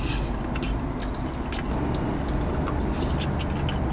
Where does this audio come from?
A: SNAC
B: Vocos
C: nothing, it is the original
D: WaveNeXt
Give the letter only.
C